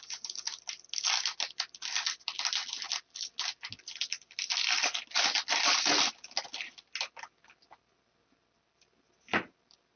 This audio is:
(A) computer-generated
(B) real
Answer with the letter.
B